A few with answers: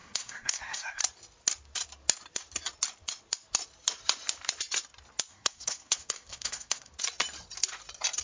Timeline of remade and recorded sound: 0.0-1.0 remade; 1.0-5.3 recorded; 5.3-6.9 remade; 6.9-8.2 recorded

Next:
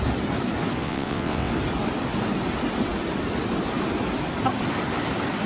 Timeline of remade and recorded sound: 0.0-0.8 recorded; 0.8-1.5 remade; 1.5-5.5 recorded

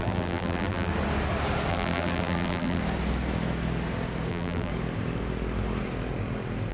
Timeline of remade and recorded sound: 0.0-0.9 remade; 0.9-1.7 recorded; 1.7-2.8 remade; 2.8-4.3 recorded; 4.3-4.7 remade; 4.7-6.7 recorded

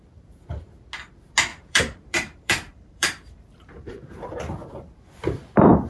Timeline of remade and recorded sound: 0.0-1.5 recorded; 1.5-4.4 remade; 4.4-5.9 recorded

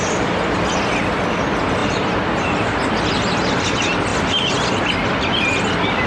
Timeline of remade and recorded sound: 0.0-6.1 recorded

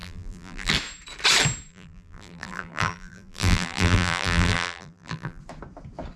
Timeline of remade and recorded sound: 0.0-0.7 remade; 0.7-1.7 recorded; 1.7-5.4 remade; 5.4-6.2 recorded

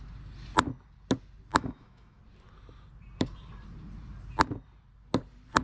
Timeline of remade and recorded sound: 0.0-1.5 recorded; 1.5-2.2 remade; 2.2-5.6 recorded